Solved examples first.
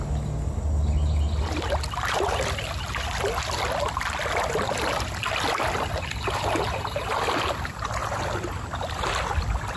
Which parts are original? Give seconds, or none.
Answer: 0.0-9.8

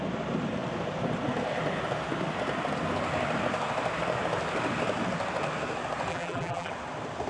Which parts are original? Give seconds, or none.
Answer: 0.0-6.1; 6.7-7.3

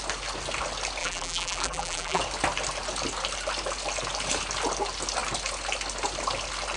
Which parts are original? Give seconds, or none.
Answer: 0.0-1.0; 2.2-6.8

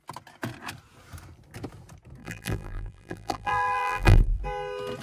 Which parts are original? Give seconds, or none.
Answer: 0.0-2.2; 4.4-5.0

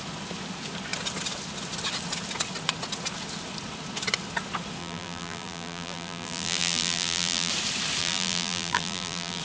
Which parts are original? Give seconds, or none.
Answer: 0.0-4.8; 7.5-8.0

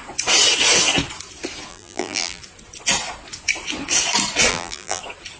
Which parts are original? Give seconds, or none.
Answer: 0.0-1.7; 2.4-4.5; 5.0-5.4

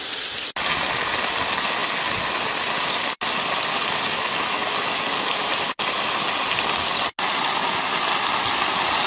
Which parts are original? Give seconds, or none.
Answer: 0.0-9.1